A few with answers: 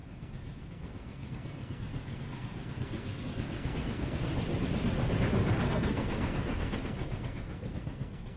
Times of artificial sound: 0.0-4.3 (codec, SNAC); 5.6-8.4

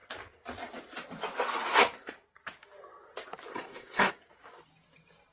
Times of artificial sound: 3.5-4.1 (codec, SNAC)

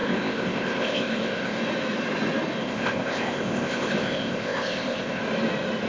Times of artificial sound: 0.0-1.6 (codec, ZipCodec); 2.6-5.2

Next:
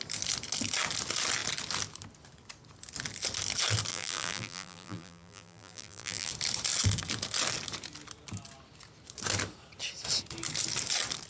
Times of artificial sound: 3.9-6.3 (vocoder, BigVGAN v2)